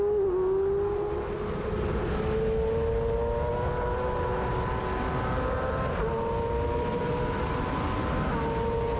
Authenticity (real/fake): real